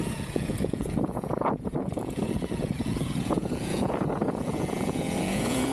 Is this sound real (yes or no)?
no